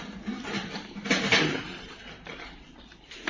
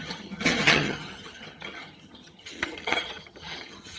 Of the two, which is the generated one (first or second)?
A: second